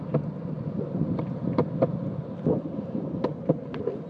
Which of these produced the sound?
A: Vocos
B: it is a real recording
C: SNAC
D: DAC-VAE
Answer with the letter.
B